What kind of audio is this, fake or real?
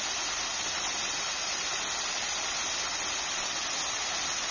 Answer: real